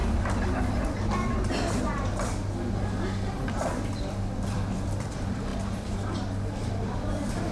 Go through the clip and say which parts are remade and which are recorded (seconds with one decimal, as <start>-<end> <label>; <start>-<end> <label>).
0.0-4.2 recorded; 4.2-5.5 remade; 5.5-6.6 recorded; 6.6-7.5 remade